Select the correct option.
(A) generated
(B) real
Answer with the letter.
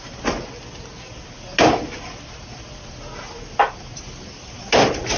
B